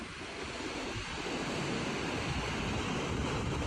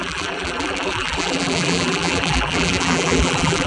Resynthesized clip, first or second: second